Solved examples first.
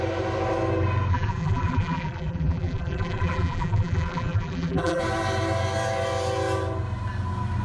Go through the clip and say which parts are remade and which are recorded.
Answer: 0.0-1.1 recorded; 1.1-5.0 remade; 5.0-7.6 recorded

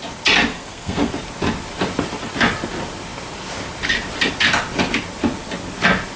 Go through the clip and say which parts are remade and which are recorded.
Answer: 0.0-0.5 recorded; 0.5-1.1 remade; 1.1-6.2 recorded

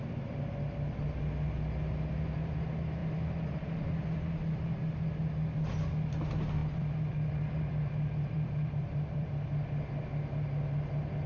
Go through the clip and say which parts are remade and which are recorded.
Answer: 0.0-6.6 recorded; 6.6-9.3 remade; 9.3-11.3 recorded

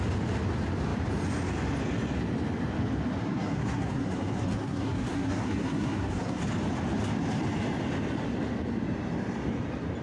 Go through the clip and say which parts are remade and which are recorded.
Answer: 0.0-3.2 recorded; 3.2-6.4 remade; 6.4-10.0 recorded

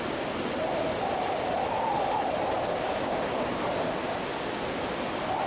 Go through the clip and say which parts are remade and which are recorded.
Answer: 0.0-5.5 recorded

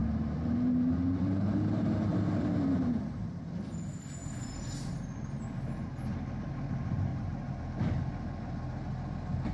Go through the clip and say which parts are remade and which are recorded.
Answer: 0.0-3.5 remade; 3.5-4.2 recorded; 4.2-5.5 remade; 5.5-7.1 recorded; 7.1-7.6 remade; 7.6-9.5 recorded